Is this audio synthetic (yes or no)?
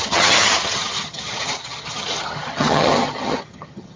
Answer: yes